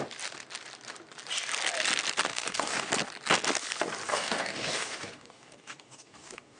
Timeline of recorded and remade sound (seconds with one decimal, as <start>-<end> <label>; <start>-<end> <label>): 0.0-2.3 recorded; 2.3-2.9 remade; 2.9-4.1 recorded; 4.1-6.6 remade